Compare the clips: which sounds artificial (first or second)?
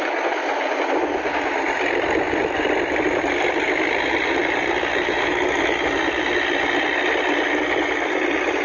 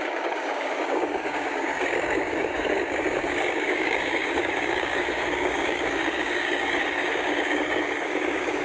second